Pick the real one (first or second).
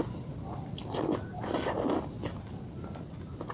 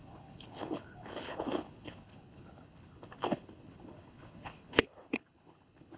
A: first